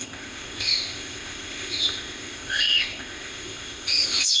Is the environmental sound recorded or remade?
remade